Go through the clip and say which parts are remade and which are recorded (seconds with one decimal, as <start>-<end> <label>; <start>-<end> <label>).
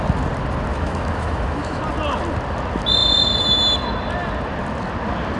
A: 0.0-0.7 recorded; 0.7-1.8 remade; 1.8-5.4 recorded